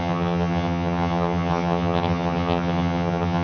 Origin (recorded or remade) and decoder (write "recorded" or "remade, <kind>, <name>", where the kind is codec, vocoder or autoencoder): remade, vocoder, HiFi-GAN